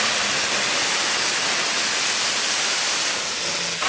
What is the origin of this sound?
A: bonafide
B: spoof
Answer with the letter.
A